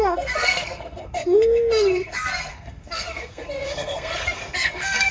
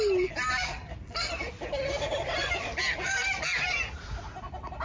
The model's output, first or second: first